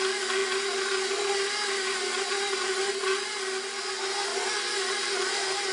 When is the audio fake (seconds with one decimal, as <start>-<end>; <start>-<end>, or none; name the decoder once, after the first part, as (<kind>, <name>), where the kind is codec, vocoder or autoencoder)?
none